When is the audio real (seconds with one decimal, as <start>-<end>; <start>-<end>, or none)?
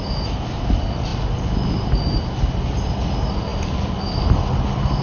0.0-5.0